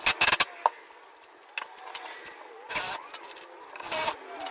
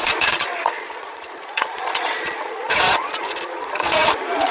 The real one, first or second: first